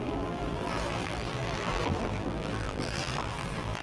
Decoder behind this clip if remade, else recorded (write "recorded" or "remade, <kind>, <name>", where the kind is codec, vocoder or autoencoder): remade, vocoder, BigVGAN v2